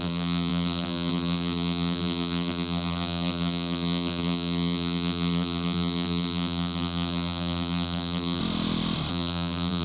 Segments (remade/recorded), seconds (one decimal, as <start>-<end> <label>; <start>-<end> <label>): 0.0-8.4 remade; 8.4-9.1 recorded; 9.1-9.8 remade